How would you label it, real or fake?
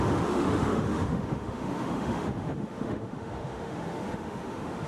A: fake